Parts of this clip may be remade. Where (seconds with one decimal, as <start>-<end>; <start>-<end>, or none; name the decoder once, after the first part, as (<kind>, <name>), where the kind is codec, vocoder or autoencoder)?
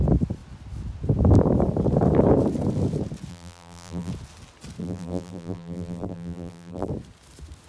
3.3-4.1 (vocoder, BigVGAN v2); 4.8-6.9